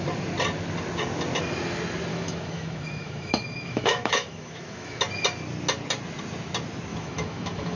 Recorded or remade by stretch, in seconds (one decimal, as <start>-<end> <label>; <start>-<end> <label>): 0.0-2.1 recorded; 2.1-5.0 remade; 5.0-6.9 recorded; 6.9-7.8 remade